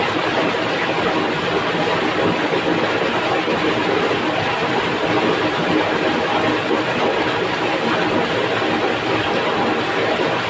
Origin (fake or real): real